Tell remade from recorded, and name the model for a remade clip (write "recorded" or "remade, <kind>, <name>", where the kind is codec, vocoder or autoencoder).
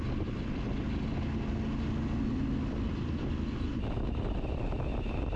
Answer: recorded